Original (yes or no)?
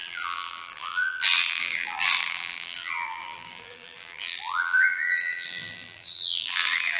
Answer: no